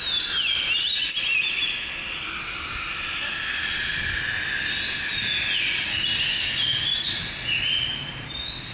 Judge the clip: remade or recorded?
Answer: recorded